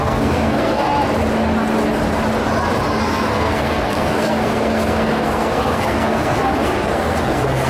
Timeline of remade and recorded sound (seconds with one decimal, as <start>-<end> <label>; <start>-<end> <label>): 0.0-0.9 remade; 0.9-3.0 recorded; 3.0-7.7 remade